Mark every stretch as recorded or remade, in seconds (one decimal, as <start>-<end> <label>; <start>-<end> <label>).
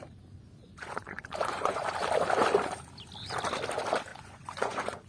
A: 0.0-0.6 recorded; 0.6-1.9 remade; 1.9-4.1 recorded; 4.1-5.1 remade